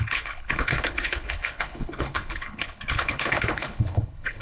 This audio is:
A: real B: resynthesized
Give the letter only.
B